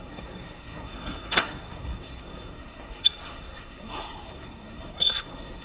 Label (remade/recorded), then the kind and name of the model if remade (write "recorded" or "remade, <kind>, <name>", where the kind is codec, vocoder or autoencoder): remade, codec, SNAC